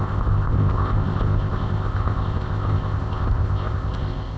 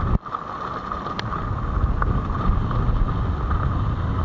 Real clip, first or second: second